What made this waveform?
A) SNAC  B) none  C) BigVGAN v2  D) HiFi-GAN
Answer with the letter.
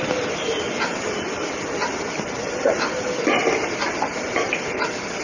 B